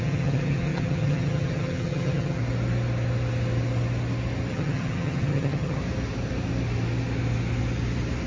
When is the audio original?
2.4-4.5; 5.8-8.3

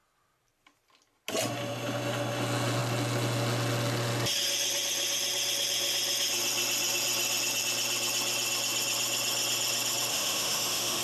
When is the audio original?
0.0-10.1

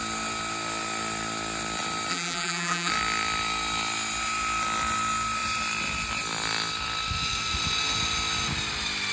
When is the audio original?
0.0-2.1; 2.9-9.1

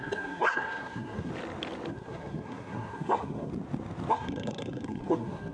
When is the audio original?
1.3-1.9; 3.5-4.1